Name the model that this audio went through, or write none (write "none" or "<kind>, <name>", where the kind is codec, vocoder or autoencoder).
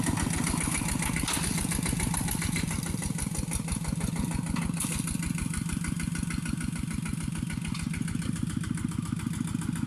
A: none